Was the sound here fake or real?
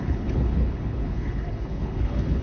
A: fake